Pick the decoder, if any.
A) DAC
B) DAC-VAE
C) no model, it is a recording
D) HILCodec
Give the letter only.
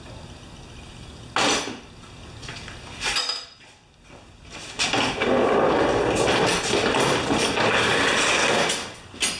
C